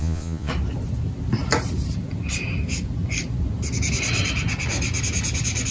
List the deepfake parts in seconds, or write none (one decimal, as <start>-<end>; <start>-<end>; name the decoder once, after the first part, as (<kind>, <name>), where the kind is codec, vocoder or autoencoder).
0.0-0.5 (vocoder, Vocos)